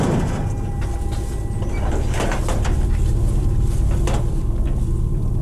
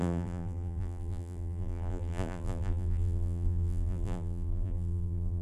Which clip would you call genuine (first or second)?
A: first